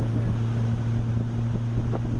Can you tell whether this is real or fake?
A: real